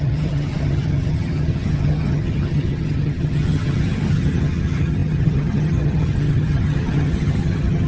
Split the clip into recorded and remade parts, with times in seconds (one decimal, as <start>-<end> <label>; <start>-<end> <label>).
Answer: 0.0-7.9 remade